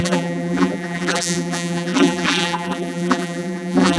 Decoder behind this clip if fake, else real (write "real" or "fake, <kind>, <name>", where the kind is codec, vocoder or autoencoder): fake, vocoder, BigVGAN v2